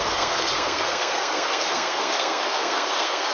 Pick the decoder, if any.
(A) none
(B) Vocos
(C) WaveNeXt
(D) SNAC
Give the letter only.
D